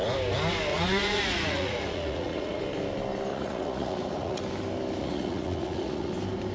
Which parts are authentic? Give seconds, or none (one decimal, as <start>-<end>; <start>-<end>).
0.0-0.7; 2.6-3.3; 4.4-5.0; 6.1-6.5

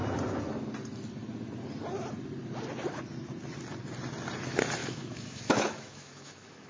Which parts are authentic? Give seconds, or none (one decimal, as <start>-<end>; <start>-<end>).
0.0-4.8

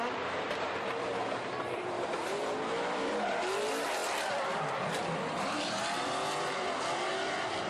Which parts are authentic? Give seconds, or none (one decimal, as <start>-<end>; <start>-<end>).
0.0-7.7

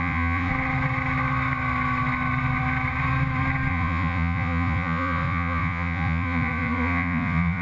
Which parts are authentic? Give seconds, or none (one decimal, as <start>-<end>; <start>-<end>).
0.5-3.7

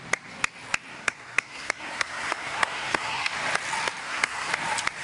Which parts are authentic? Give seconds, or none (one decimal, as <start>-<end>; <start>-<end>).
0.0-0.9; 3.3-4.0; 4.5-5.0

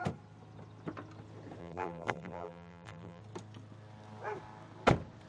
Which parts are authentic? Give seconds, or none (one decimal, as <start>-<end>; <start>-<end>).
0.0-1.6; 3.2-5.3